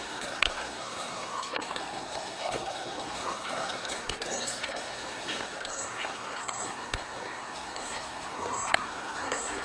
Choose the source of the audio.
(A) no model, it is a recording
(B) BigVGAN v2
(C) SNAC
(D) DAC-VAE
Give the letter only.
C